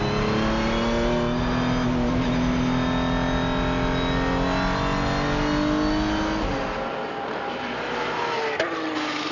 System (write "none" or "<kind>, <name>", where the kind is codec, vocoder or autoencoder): none